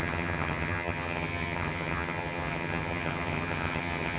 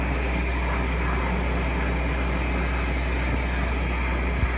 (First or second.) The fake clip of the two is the first